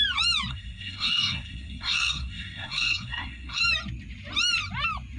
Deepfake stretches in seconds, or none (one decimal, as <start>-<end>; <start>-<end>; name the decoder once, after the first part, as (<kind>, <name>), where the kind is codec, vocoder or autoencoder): 0.5-3.6 (codec, SNAC)